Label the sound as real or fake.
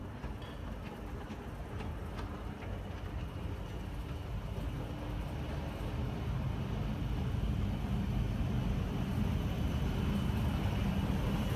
real